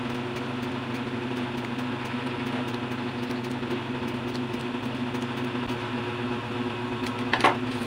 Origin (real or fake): real